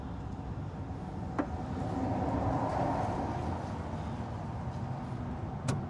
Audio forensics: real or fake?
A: real